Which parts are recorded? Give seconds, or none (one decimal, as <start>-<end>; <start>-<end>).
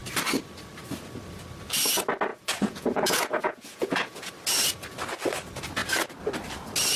0.0-2.3; 4.3-7.0